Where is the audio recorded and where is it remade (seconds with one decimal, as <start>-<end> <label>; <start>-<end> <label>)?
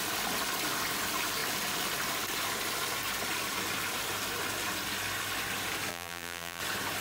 0.0-5.9 recorded; 5.9-6.6 remade; 6.6-7.0 recorded